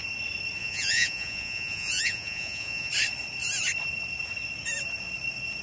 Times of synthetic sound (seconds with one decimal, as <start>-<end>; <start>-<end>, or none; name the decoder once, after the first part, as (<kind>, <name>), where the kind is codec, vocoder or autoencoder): 0.6-2.9 (vocoder, Vocos)